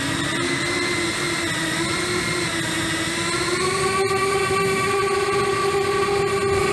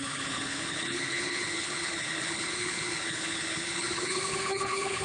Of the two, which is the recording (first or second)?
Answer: first